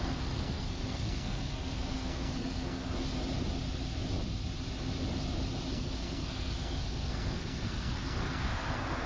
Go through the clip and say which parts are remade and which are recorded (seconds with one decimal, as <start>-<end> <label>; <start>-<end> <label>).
0.0-2.9 remade; 2.9-5.7 recorded; 5.7-9.1 remade